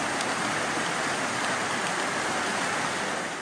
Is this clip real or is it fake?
real